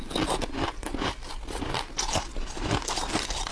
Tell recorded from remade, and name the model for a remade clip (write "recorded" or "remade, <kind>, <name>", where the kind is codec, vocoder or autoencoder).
recorded